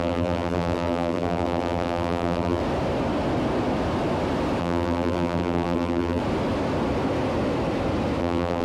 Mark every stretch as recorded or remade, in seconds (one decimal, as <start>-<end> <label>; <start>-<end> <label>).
0.0-2.6 remade; 2.6-4.6 recorded; 4.6-6.2 remade; 6.2-8.2 recorded; 8.2-8.6 remade